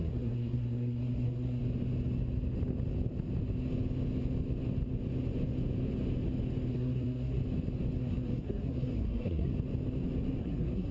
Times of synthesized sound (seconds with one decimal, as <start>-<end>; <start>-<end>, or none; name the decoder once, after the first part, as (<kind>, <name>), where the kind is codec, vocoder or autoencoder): 0.0-1.6 (codec, SNAC); 6.7-7.4; 8.0-9.5; 10.4-10.9